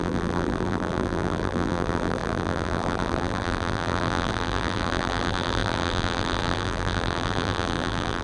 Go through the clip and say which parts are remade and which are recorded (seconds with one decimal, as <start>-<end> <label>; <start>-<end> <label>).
0.0-8.2 remade